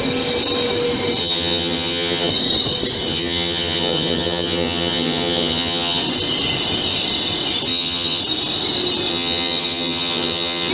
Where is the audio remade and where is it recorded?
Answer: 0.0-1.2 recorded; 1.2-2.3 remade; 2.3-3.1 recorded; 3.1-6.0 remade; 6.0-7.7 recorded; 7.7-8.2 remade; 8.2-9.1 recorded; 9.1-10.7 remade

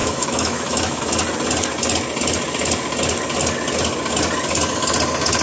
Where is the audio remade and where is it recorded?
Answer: 0.0-1.0 remade; 1.0-5.4 recorded

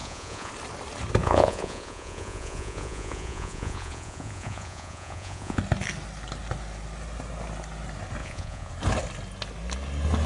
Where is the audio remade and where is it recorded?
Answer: 0.0-0.5 remade; 0.5-1.2 recorded; 1.2-5.6 remade; 5.6-8.2 recorded; 8.2-8.7 remade; 8.7-10.3 recorded